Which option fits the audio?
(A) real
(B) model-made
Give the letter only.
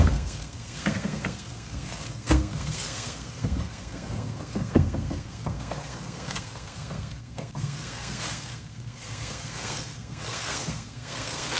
B